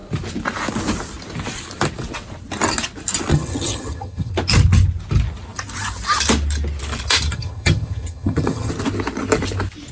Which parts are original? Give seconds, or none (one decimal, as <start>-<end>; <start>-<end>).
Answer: 0.0-3.3; 4.3-7.3; 8.7-9.9